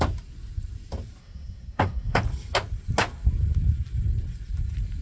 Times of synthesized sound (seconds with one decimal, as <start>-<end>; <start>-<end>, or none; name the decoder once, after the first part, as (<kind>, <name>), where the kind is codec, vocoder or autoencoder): 1.2-2.2 (codec, SNAC)